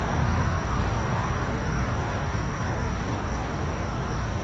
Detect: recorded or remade remade